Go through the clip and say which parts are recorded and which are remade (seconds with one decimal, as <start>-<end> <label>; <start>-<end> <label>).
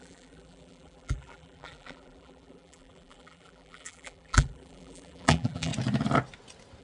0.0-5.7 remade; 5.7-6.8 recorded